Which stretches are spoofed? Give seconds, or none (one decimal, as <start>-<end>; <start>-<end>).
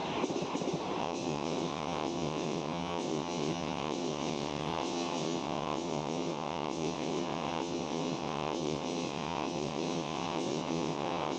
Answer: 1.0-11.4